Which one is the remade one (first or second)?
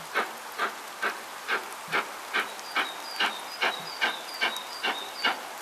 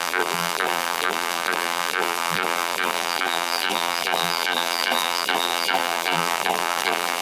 second